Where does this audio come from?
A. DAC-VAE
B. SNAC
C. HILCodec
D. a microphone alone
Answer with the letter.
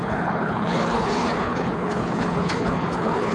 C